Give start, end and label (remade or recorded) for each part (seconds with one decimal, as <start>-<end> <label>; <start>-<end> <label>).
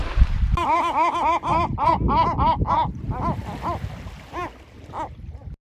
0.0-5.7 recorded